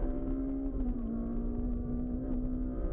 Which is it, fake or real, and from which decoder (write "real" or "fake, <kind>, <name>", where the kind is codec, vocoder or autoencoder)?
real